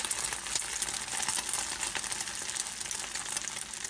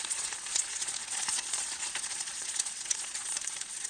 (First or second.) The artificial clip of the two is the second